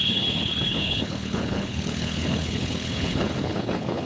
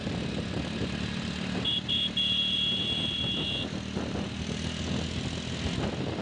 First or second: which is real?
second